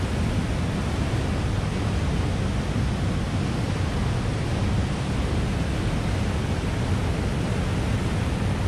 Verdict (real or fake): real